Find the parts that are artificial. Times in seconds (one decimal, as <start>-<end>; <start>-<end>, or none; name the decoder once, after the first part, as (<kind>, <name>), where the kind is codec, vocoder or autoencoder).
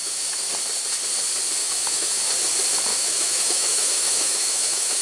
0.0-0.5 (autoencoder, DAC-VAE); 1.6-2.2; 2.9-5.0